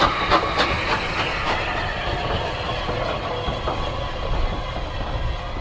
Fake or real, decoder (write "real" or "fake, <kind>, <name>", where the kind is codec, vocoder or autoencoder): real